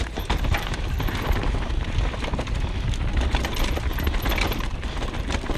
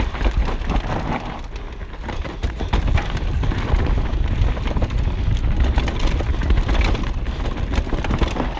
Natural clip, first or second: second